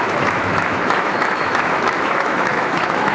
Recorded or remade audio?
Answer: remade